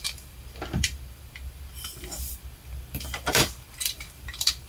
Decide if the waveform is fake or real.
fake